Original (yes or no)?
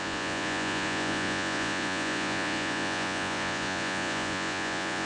no